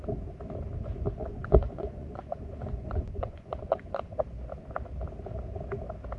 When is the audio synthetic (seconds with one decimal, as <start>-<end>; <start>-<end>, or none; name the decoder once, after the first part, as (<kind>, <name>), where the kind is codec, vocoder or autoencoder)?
1.2-4.0 (vocoder, Vocos)